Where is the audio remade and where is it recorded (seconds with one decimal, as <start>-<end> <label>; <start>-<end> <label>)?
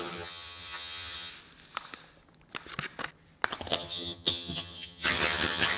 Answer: 0.0-1.3 remade; 1.3-3.7 recorded; 3.7-5.8 remade